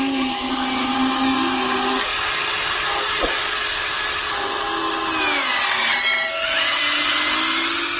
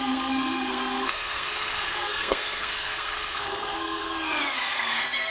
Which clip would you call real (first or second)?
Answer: first